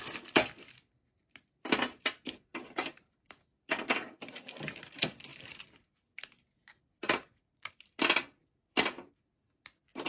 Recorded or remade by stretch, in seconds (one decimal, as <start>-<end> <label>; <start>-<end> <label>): 0.0-10.1 recorded

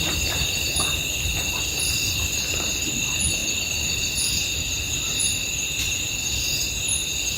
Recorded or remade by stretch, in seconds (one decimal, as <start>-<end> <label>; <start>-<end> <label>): 0.0-7.4 recorded

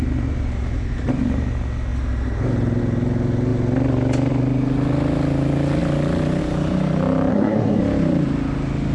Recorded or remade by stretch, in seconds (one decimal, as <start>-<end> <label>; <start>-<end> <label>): 0.0-7.3 recorded; 7.3-7.8 remade; 7.8-8.9 recorded

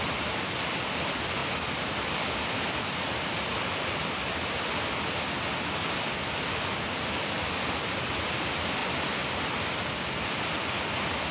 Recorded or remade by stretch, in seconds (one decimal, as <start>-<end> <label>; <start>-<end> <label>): 0.0-11.3 recorded

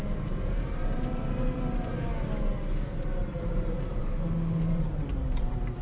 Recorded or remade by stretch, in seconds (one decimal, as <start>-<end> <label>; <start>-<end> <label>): 0.0-2.1 remade; 2.1-3.3 recorded; 3.3-4.0 remade; 4.0-4.7 recorded; 4.7-5.8 remade

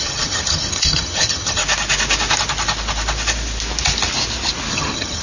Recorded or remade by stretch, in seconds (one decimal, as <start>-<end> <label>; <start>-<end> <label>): 0.0-1.6 remade; 1.6-4.7 recorded; 4.7-5.2 remade